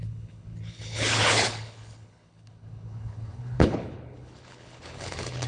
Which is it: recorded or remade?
remade